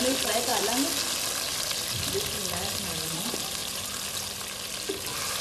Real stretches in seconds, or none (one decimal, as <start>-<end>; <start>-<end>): 0.0-5.4

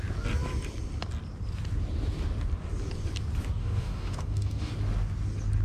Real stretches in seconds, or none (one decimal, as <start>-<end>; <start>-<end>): 0.0-3.6; 4.7-5.6

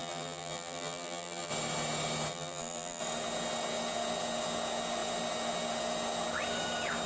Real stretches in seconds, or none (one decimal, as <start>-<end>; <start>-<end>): 1.5-2.3; 3.0-7.1

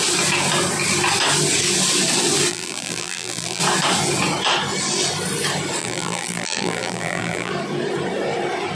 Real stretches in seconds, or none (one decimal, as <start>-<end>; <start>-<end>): 0.0-2.5; 3.6-5.8; 7.5-8.7